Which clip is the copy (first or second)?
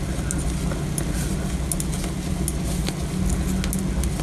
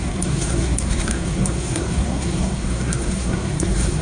second